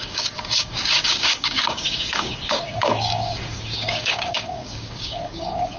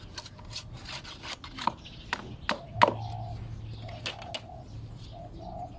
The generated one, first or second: first